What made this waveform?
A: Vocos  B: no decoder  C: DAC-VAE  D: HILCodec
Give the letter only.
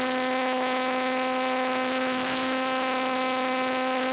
B